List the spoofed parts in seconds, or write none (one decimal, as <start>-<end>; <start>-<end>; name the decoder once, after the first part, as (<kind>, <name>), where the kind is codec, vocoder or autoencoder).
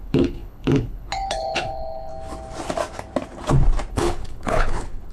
0.0-2.1 (codec, HILCodec); 3.9-5.1